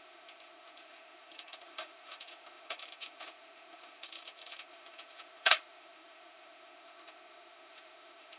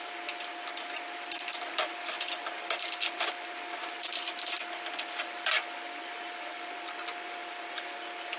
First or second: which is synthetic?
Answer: first